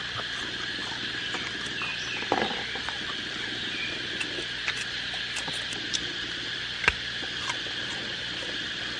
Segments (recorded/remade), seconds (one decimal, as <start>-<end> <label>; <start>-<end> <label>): 0.0-9.0 recorded